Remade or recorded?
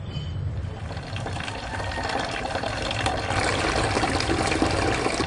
remade